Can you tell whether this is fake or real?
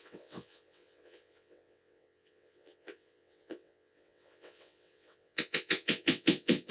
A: fake